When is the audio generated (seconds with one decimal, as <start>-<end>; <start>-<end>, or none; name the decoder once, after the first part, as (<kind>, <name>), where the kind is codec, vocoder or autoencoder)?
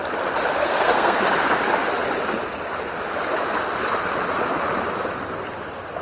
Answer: 0.6-1.2 (codec, SNAC)